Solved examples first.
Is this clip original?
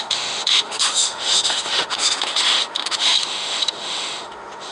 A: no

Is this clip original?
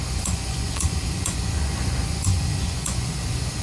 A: no